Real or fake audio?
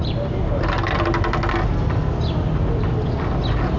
real